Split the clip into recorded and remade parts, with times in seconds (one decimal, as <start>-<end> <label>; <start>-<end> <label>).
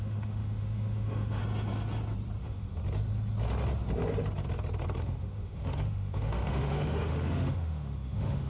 0.0-1.4 remade; 1.4-2.4 recorded; 2.4-2.8 remade; 2.8-5.0 recorded; 5.0-8.5 remade